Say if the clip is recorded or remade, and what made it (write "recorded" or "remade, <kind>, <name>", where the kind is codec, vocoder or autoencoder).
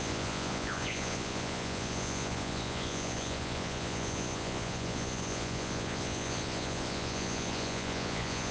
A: remade, vocoder, Vocos